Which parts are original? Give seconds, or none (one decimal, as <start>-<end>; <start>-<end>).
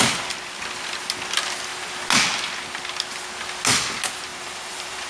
0.0-4.3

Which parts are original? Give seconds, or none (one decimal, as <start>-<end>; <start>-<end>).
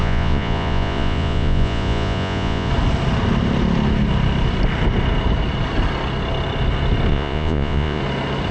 2.7-7.1; 8.0-8.5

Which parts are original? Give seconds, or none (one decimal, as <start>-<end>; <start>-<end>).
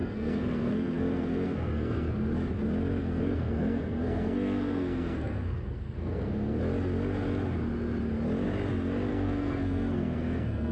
2.1-3.0; 6.6-9.1